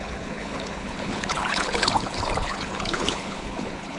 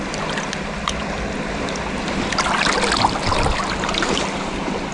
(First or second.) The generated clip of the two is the first